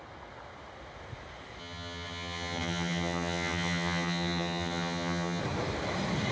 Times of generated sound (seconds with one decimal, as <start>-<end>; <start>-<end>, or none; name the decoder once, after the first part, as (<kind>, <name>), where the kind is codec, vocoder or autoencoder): 1.6-5.4 (vocoder, HiFi-GAN)